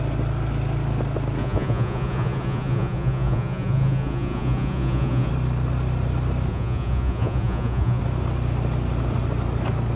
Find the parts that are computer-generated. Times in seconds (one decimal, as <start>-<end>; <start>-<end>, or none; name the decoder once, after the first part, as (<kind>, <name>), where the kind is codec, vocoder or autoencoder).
1.4-5.3 (vocoder, Vocos); 6.5-8.0